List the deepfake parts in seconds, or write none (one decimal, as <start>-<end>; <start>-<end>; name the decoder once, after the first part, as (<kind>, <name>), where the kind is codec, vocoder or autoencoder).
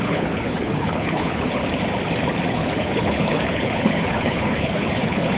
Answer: 0.0-1.6 (codec, HILCodec); 2.5-5.4